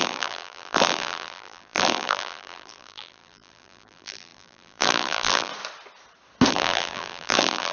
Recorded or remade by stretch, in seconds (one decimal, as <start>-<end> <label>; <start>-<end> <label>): 0.0-5.5 remade; 5.5-6.5 recorded; 6.5-7.7 remade